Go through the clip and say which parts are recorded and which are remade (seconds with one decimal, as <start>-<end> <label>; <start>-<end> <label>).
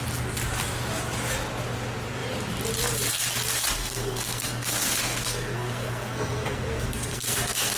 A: 0.0-3.8 recorded; 3.8-7.8 remade